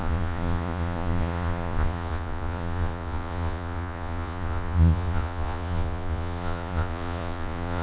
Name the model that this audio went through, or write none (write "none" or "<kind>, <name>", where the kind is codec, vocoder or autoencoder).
vocoder, Vocos